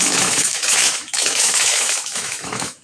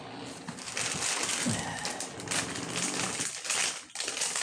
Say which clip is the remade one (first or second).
first